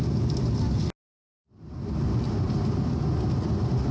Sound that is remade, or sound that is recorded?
recorded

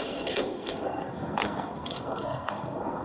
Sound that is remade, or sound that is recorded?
remade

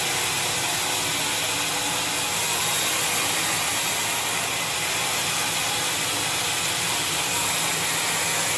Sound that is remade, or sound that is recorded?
recorded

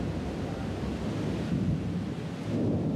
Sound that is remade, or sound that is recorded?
recorded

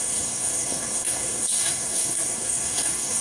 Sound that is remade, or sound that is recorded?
remade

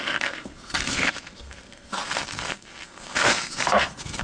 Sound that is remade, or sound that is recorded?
remade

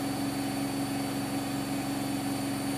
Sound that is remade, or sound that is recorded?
recorded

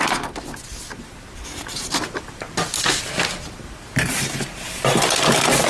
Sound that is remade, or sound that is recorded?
recorded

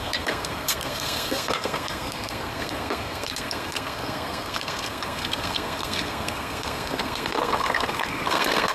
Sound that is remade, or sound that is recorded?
remade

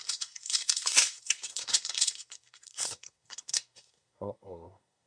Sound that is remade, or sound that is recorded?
remade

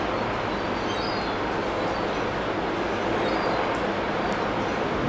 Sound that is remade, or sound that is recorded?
recorded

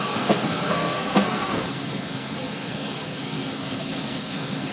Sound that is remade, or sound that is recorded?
remade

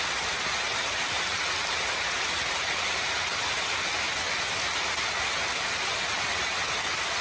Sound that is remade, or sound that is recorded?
recorded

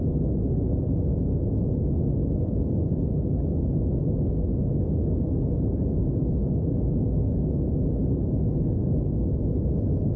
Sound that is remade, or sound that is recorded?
recorded